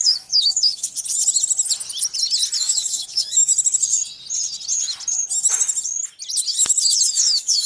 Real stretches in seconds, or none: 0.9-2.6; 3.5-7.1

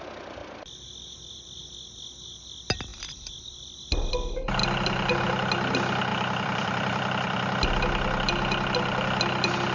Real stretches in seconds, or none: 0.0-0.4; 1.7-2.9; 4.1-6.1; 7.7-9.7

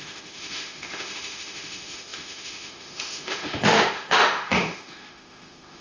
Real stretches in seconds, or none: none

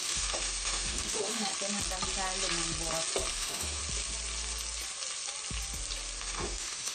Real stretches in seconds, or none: 1.5-3.3; 3.8-6.2

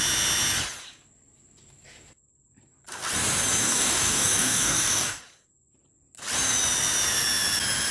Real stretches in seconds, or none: 0.0-3.6; 5.2-7.9

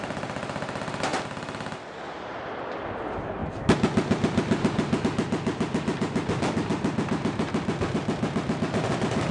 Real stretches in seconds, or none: 0.0-9.3